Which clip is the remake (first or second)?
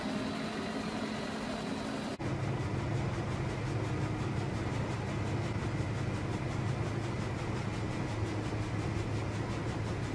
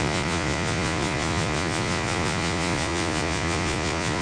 second